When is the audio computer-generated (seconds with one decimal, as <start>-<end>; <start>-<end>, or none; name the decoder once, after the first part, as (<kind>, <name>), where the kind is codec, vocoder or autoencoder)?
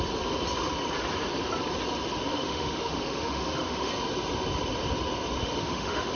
2.3-3.9 (autoencoder, DAC-VAE); 5.4-6.1